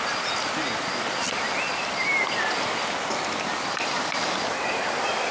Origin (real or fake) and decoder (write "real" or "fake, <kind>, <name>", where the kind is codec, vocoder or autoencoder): real